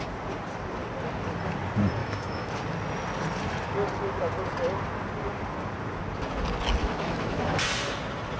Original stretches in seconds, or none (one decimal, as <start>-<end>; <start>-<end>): 0.0-2.0; 2.5-6.8; 7.6-8.4